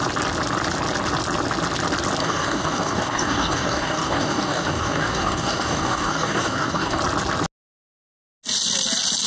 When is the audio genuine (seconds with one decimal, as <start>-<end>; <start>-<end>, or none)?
0.0-2.2; 7.0-9.3